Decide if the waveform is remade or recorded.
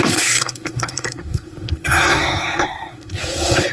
remade